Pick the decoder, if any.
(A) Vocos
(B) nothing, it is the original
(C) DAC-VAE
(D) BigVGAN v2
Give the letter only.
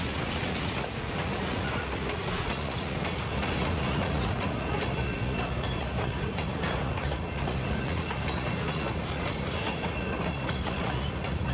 A